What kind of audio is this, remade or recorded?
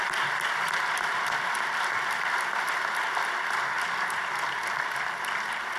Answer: recorded